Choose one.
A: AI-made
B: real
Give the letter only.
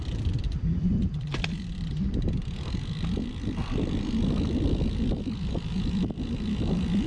B